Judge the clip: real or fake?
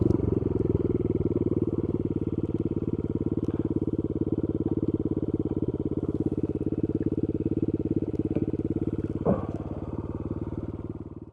real